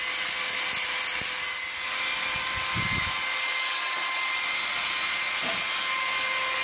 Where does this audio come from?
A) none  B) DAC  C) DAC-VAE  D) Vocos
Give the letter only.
A